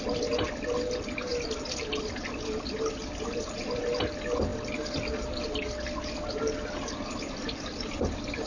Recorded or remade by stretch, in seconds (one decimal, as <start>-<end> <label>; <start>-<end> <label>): 0.0-8.5 recorded